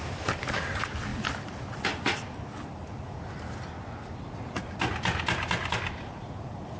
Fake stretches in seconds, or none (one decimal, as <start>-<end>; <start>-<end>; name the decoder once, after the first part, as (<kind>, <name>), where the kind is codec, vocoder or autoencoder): none